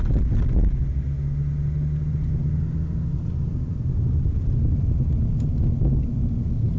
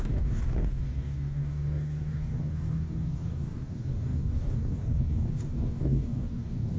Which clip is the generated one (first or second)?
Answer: second